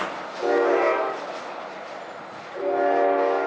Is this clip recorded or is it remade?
recorded